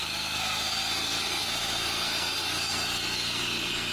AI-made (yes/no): yes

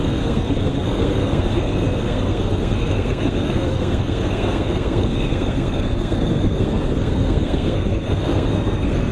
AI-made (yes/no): yes